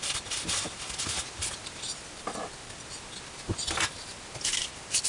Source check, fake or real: real